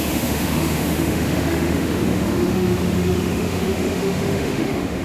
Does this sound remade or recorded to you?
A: remade